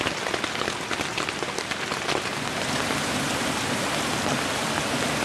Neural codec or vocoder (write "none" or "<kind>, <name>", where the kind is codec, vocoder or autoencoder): none